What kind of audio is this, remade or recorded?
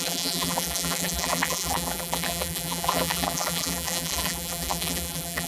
remade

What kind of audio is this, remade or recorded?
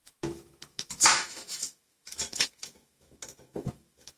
remade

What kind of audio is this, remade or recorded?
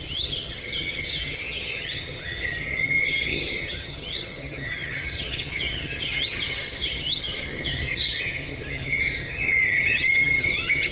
remade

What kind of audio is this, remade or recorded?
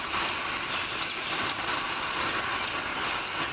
recorded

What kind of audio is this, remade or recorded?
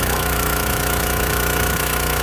remade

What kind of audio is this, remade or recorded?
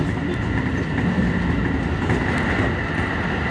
recorded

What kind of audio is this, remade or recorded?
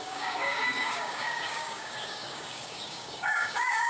remade